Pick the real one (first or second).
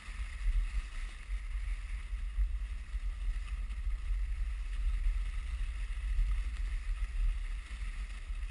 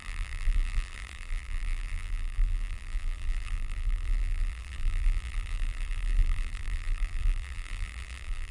first